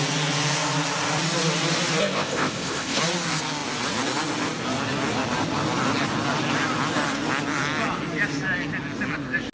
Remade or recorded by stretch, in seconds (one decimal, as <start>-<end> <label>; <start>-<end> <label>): 0.0-2.0 recorded; 2.0-3.0 remade; 3.0-9.5 recorded

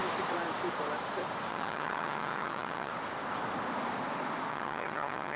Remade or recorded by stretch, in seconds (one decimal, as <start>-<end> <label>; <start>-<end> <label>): 0.0-1.5 recorded; 1.5-2.9 remade; 2.9-4.5 recorded; 4.5-5.4 remade